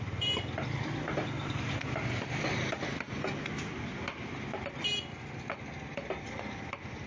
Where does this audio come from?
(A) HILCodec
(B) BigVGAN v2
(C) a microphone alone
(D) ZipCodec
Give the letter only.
C